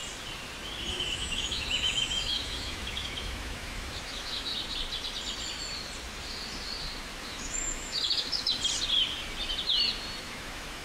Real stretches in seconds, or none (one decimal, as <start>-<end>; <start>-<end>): 0.0-0.9; 4.5-7.2; 8.5-10.2